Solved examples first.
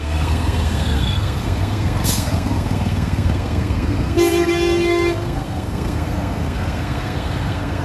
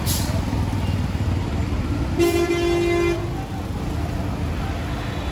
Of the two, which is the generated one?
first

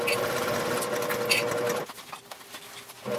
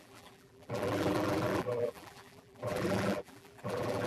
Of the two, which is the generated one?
second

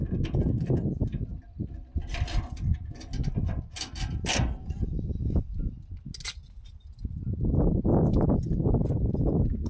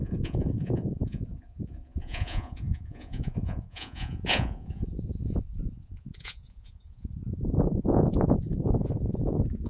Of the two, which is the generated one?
second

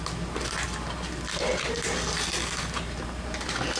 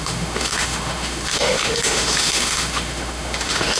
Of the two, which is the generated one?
second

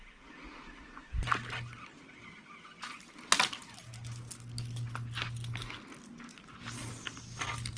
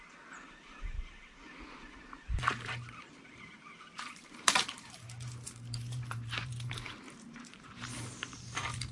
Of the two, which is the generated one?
second